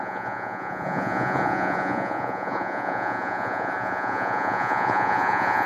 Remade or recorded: remade